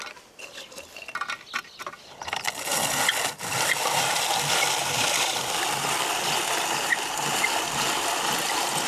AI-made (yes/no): no